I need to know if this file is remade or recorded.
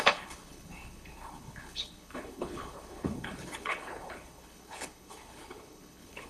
remade